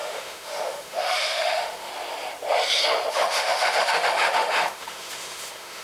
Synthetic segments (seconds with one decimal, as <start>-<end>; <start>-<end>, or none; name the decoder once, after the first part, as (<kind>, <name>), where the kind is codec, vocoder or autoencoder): 0.0-1.9 (autoencoder, DAC-VAE); 3.1-5.8